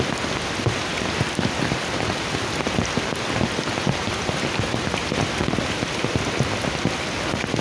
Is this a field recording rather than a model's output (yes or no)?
yes